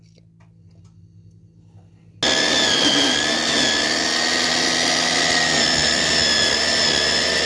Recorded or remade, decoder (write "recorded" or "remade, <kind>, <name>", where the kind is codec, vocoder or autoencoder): recorded